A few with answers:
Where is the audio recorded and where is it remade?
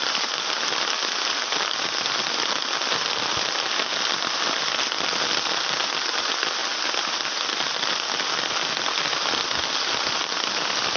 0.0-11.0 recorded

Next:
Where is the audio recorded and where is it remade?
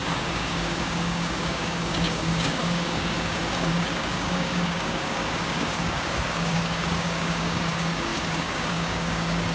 0.0-9.5 remade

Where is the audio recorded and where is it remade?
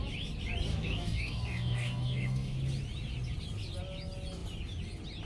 0.0-0.7 recorded; 0.7-2.6 remade; 2.6-5.3 recorded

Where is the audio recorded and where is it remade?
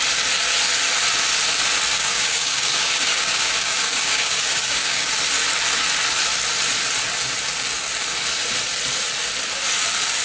0.0-1.9 recorded; 1.9-5.1 remade; 5.1-10.2 recorded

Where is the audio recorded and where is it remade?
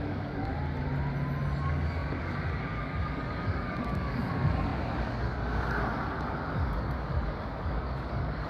0.0-0.5 remade; 0.5-1.6 recorded; 1.6-8.5 remade